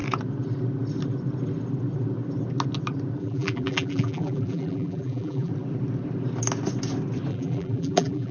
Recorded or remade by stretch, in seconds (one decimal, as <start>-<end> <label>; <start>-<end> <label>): 0.0-3.2 recorded; 3.2-5.5 remade; 5.5-7.3 recorded; 7.3-8.3 remade